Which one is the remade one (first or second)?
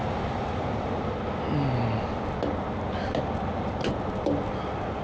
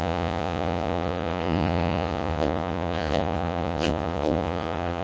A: second